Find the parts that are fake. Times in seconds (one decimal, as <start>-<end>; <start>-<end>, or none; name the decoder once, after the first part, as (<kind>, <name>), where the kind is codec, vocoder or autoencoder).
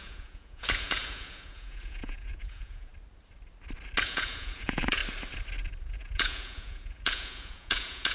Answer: 0.0-2.9 (vocoder, Vocos); 4.0-5.0; 5.8-8.1